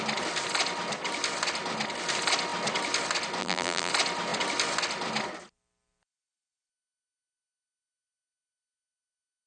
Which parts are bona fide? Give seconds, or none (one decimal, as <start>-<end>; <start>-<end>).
0.0-3.4; 3.9-9.5